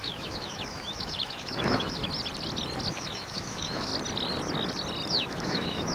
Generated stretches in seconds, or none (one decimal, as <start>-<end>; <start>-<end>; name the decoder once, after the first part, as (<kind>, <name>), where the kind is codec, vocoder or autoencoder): 0.0-2.0 (autoencoder, DAC-VAE); 2.9-3.9; 5.1-5.9